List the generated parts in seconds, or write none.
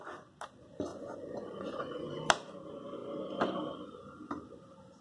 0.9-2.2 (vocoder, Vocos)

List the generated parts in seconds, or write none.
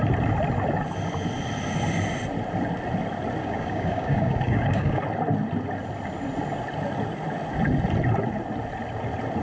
3.4-5.0 (codec, DAC)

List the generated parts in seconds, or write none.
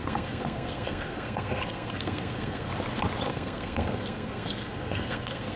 0.0-2.7 (codec, SNAC); 3.3-5.6